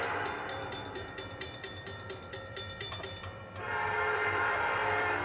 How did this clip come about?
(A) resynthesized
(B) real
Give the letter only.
A